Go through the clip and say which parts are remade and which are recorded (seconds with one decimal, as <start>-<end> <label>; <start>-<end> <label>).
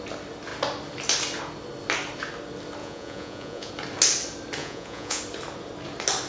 0.0-2.8 recorded; 2.8-3.7 remade; 3.7-4.6 recorded; 4.6-5.2 remade; 5.2-6.3 recorded